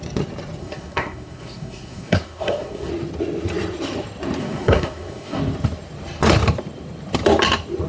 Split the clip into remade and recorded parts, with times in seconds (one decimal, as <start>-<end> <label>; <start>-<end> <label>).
0.0-0.6 recorded; 0.6-2.9 remade; 2.9-4.4 recorded; 4.4-5.4 remade; 5.4-7.9 recorded